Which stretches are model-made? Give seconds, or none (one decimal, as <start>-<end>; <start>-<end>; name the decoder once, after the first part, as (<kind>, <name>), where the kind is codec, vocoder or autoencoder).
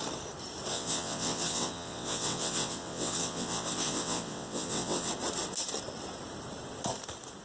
0.7-5.1 (vocoder, WaveNeXt)